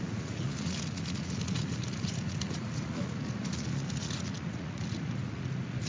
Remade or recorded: remade